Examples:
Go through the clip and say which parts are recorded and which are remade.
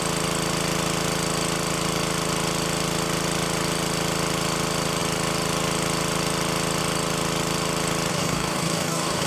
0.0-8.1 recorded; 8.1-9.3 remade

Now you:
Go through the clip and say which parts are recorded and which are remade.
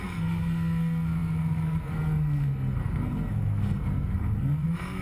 0.0-5.0 remade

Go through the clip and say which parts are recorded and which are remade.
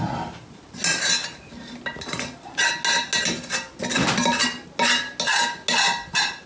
0.0-6.5 recorded